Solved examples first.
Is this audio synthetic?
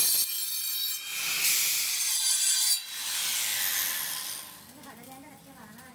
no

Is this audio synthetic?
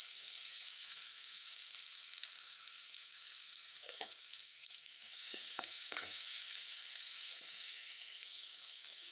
yes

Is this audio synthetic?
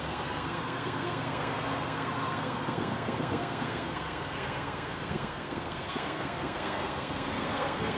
yes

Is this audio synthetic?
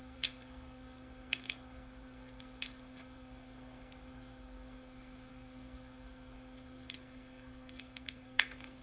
yes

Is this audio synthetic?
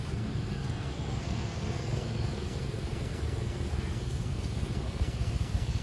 yes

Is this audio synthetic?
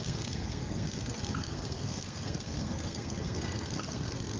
yes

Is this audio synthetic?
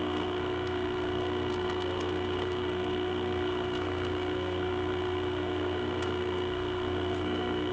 yes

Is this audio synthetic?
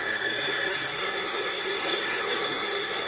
yes